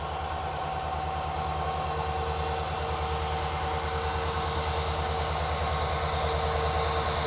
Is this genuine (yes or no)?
yes